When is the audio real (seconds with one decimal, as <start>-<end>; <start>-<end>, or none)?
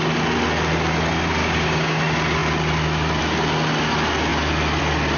0.0-1.4; 2.0-5.2